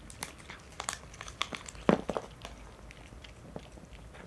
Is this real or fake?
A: real